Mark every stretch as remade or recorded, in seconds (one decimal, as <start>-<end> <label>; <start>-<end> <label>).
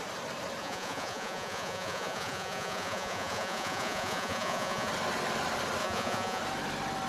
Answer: 0.0-0.6 recorded; 0.6-4.9 remade; 4.9-5.8 recorded; 5.8-6.4 remade; 6.4-7.1 recorded